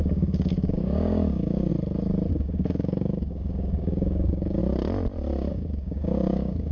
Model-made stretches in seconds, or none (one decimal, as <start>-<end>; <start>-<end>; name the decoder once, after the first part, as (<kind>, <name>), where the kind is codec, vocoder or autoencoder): 0.0-1.7 (codec, DAC); 2.3-4.6; 5.5-6.7